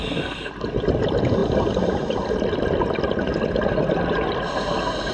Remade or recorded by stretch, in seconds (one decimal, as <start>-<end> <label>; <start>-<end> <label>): 0.0-0.5 remade; 0.5-5.1 recorded